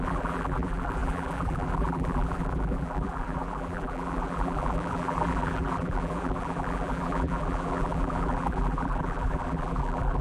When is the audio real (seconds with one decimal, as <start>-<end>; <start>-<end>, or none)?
none